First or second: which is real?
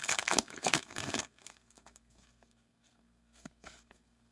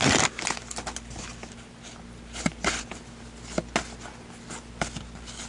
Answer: second